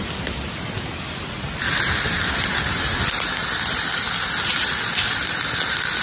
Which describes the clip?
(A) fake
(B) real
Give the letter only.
B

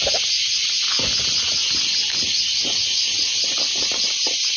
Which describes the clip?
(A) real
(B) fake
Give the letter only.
A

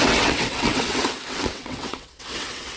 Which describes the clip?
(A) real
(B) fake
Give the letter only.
B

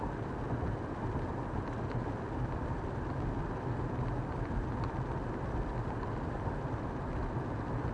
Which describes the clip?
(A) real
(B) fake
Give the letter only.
B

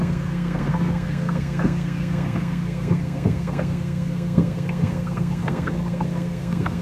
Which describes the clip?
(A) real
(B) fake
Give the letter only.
B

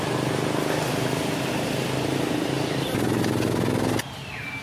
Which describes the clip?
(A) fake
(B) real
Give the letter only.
B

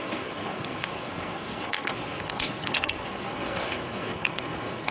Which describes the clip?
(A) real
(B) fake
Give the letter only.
B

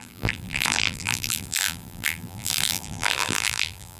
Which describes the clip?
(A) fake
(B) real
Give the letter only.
A